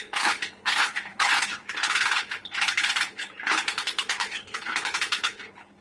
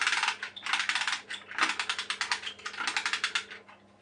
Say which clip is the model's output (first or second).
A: first